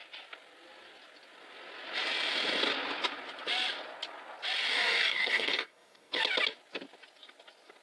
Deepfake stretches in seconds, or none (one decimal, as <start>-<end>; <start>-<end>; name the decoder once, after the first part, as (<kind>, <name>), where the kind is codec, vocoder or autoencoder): 4.7-6.2 (codec, DAC)